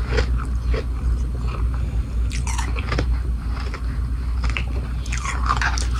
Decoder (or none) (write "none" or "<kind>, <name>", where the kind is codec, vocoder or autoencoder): none